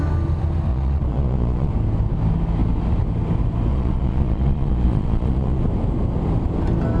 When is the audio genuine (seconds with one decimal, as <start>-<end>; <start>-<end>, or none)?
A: 0.0-0.7; 1.7-3.7; 5.6-7.0